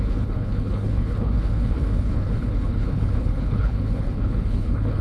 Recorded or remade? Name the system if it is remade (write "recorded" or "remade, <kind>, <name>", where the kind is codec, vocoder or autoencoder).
remade, codec, HILCodec